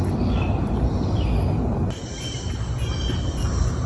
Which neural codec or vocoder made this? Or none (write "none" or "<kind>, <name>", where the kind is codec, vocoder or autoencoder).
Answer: none